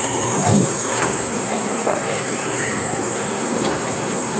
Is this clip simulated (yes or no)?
yes